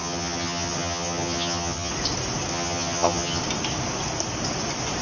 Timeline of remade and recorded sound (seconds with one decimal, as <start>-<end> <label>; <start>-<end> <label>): 0.0-1.9 remade; 1.9-2.5 recorded; 2.5-3.4 remade; 3.4-5.0 recorded